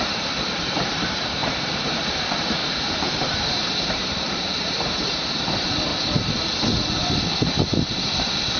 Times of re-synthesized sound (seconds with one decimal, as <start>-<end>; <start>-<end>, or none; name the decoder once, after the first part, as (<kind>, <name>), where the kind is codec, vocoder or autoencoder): 0.0-5.9 (vocoder, BigVGAN v2); 7.9-8.6